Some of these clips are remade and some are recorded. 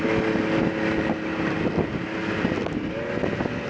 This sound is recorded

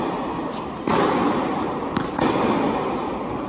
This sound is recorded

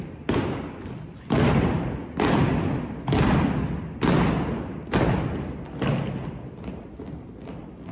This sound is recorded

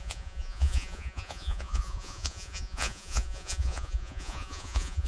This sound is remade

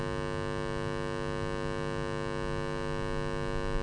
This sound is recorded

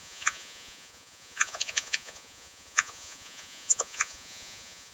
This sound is remade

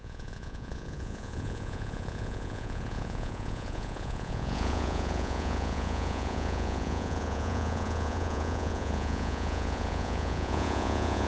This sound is remade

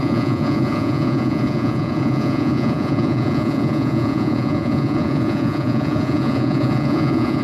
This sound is remade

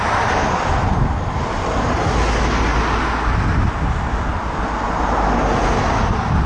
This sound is recorded